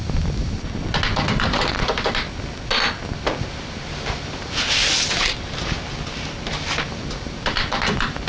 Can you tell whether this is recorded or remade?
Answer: recorded